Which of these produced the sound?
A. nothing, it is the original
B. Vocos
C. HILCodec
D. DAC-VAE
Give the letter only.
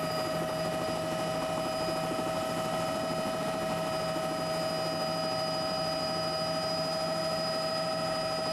A